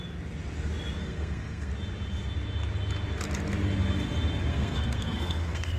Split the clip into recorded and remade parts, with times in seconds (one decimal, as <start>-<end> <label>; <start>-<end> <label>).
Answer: 0.0-1.0 recorded; 1.0-1.7 remade; 1.7-4.5 recorded; 4.5-5.8 remade